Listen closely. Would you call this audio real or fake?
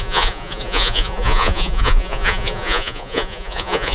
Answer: fake